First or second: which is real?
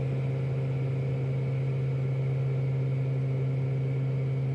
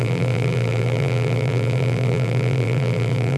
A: first